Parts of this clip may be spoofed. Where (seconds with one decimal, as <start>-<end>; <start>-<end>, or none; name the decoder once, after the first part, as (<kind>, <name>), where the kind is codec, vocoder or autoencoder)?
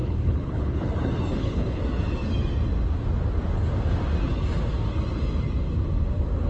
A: 0.0-0.9 (codec, HILCodec); 1.3-1.8